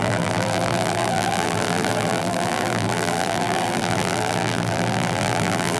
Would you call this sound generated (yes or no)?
yes